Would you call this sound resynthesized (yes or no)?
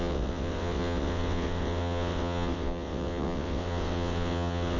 yes